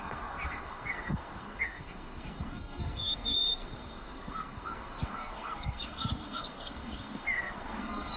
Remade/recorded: remade